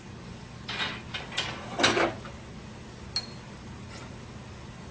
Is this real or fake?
real